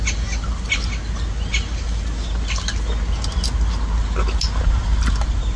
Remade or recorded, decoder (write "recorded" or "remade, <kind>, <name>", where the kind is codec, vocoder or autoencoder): recorded